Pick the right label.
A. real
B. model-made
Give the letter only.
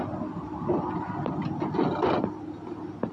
A